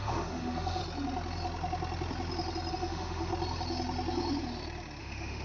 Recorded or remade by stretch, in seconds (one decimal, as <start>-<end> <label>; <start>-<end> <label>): 0.0-0.8 remade; 0.8-2.7 recorded; 2.7-3.3 remade; 3.3-5.0 recorded; 5.0-5.4 remade